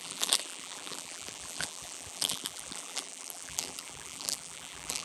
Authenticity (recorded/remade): remade